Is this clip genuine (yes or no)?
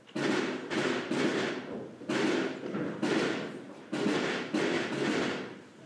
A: yes